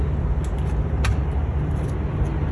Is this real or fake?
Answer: real